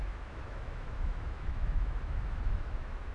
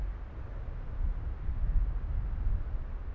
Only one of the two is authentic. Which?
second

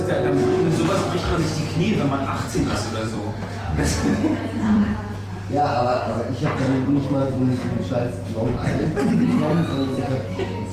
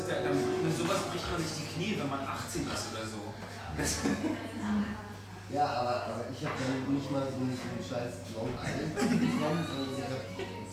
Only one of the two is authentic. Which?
second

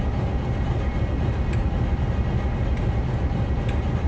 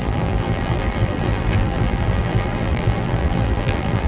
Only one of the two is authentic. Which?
first